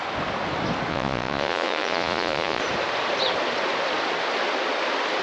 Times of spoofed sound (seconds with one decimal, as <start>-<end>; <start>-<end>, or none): 0.9-2.6